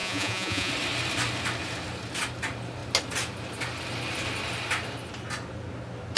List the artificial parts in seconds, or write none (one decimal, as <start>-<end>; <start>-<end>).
0.0-0.7